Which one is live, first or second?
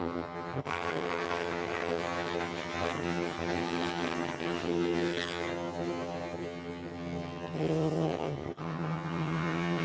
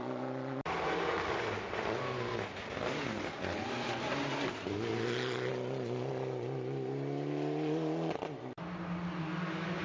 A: second